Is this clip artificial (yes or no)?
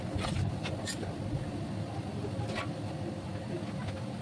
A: no